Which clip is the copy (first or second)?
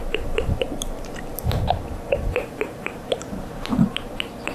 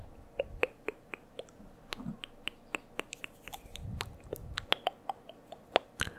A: first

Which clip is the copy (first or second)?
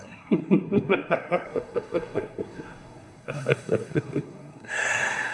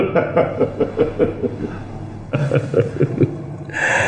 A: first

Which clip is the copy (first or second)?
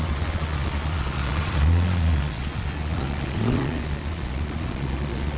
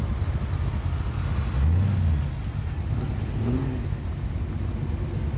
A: first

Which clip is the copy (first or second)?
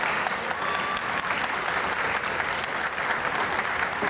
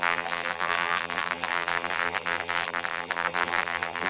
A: second